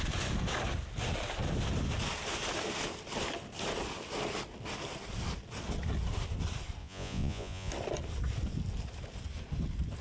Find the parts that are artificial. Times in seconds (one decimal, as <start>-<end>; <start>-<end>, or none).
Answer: 6.8-7.7